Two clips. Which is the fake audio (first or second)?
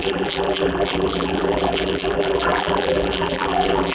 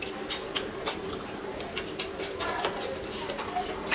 first